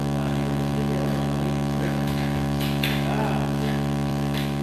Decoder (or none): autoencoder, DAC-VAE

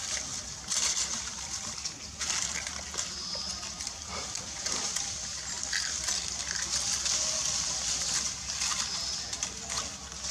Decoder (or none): none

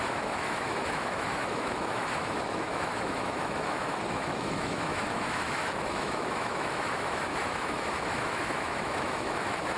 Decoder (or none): autoencoder, DAC-VAE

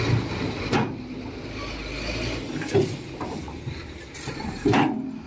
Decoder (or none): none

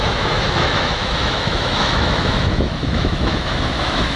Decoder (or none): autoencoder, DAC-VAE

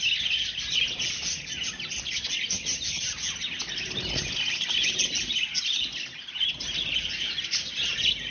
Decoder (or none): none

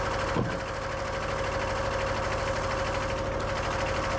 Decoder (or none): none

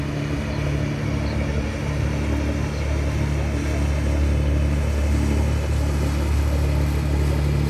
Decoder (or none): none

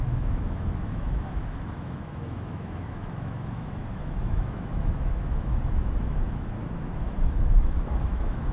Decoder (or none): autoencoder, DAC-VAE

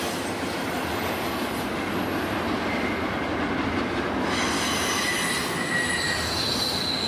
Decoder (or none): none